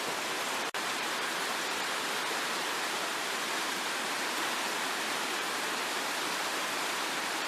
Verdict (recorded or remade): remade